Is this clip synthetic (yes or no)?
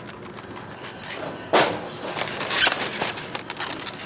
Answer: no